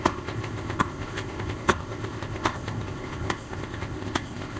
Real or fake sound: fake